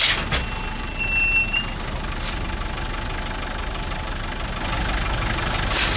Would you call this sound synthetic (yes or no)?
no